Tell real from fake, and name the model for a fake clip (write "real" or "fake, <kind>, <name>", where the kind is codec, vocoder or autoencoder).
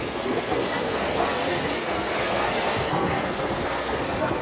fake, codec, SNAC